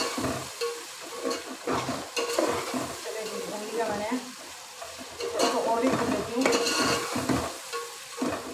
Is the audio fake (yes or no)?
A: no